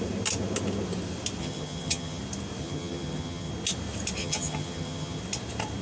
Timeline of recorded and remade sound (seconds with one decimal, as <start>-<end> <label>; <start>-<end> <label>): 0.0-1.4 recorded; 1.4-2.2 remade; 2.2-2.6 recorded; 2.6-3.5 remade; 3.5-4.2 recorded; 4.2-5.2 remade; 5.2-5.8 recorded